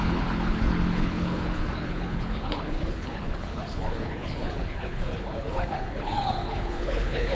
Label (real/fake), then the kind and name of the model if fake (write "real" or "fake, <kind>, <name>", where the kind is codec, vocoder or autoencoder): fake, codec, HILCodec